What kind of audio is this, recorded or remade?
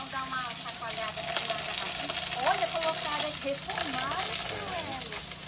recorded